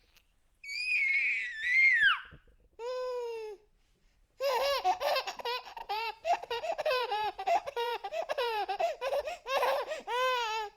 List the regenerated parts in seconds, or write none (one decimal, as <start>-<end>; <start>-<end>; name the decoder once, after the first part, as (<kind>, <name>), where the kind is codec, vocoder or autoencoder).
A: 5.8-9.2 (vocoder, Vocos)